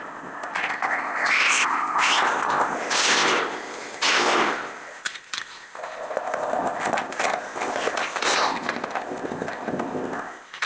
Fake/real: fake